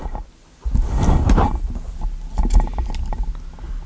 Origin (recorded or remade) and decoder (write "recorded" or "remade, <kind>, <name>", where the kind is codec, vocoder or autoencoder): recorded